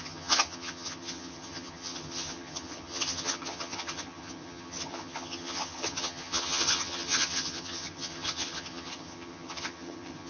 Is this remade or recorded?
remade